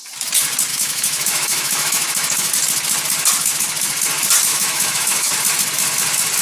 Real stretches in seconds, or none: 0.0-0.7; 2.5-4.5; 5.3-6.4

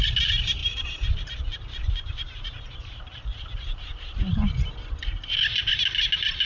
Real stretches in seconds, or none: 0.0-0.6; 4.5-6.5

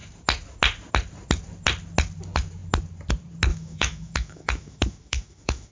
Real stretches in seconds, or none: 0.0-3.5

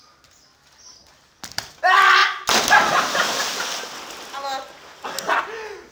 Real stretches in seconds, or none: 0.0-5.9

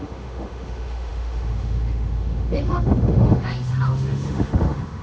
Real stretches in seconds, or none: none

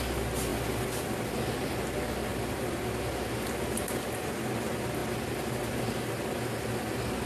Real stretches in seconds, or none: 0.0-7.3

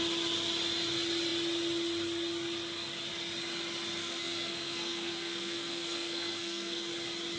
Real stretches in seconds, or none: 0.0-4.0; 6.9-7.4

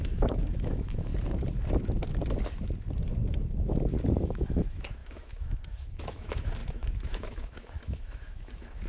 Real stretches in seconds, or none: 1.1-4.2